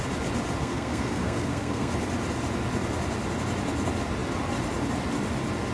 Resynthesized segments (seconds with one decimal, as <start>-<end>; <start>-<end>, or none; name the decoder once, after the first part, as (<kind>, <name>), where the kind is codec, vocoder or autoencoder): 0.6-1.9 (codec, SNAC)